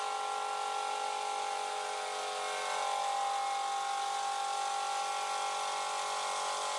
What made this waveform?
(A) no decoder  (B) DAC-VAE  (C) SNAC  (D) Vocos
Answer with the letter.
A